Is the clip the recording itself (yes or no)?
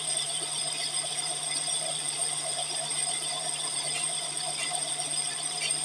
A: no